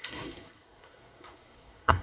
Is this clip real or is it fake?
fake